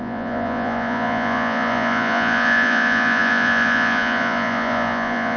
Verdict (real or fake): fake